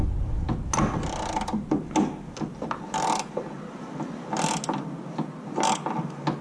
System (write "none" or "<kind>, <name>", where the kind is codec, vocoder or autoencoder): none